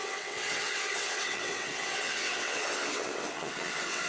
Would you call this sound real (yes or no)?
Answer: no